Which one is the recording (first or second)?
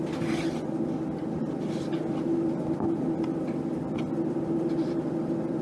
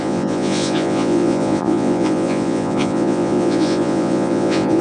first